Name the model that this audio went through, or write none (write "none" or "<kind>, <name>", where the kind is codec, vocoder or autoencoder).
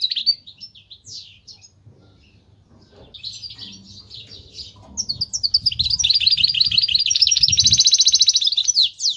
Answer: none